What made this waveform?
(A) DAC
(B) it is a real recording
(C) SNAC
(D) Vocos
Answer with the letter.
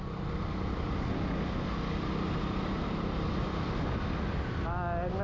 B